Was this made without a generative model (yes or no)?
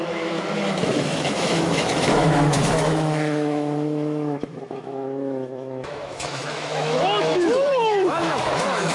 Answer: no